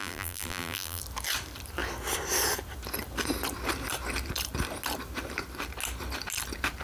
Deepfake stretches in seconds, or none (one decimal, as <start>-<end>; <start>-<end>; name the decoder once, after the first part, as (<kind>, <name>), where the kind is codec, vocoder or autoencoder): 0.0-1.0 (vocoder, BigVGAN v2)